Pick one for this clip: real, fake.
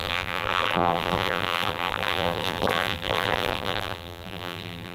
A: fake